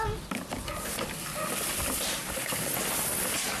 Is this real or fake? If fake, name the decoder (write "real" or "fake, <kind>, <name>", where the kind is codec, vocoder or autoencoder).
real